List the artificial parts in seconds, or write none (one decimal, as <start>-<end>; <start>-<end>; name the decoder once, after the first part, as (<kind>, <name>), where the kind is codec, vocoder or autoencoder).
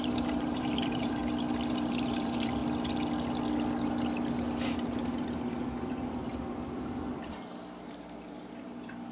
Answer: 0.0-1.2 (vocoder, BigVGAN v2); 1.7-2.6; 7.8-9.1